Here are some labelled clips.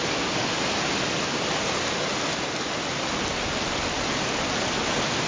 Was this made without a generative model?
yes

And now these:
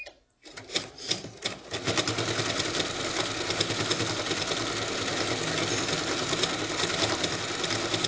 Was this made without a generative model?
yes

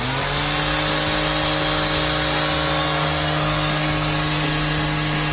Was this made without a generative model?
yes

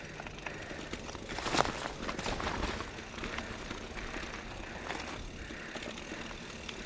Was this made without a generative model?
yes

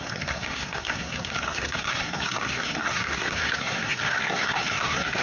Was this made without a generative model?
no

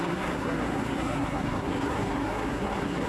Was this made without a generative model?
no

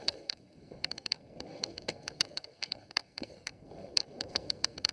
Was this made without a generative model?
no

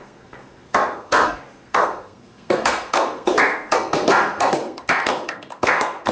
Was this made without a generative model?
no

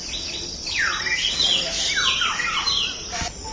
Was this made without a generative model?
yes